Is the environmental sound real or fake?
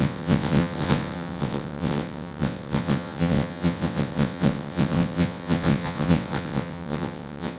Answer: fake